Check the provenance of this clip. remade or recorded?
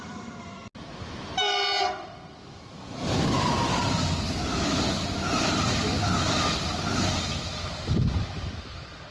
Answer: recorded